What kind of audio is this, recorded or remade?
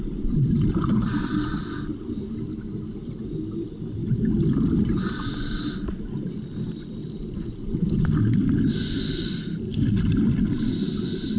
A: recorded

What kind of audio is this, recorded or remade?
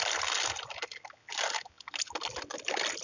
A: recorded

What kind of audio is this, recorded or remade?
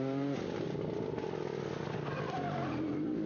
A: recorded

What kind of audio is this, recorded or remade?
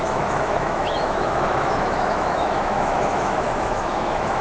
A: remade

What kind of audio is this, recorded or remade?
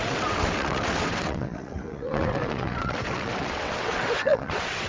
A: remade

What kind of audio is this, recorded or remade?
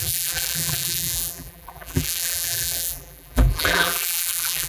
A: remade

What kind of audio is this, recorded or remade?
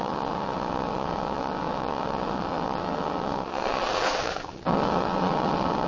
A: remade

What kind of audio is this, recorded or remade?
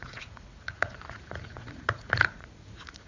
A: remade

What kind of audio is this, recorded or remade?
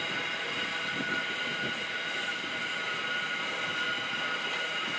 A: recorded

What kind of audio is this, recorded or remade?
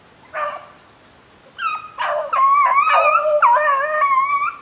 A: recorded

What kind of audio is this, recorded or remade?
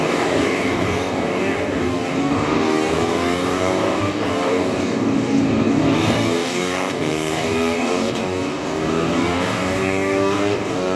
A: remade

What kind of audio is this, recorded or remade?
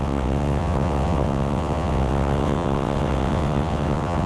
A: remade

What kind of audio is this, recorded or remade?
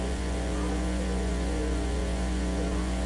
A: remade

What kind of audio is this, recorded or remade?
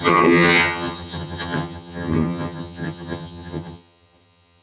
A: remade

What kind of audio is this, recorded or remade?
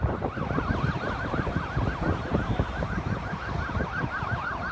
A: recorded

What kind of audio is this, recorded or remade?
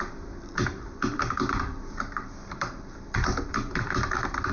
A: remade